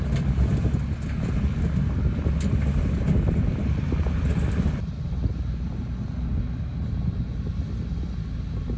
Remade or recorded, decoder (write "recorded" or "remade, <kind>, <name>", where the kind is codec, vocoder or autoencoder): recorded